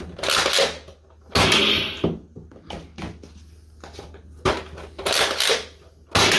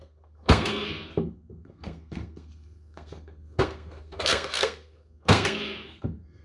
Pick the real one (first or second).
first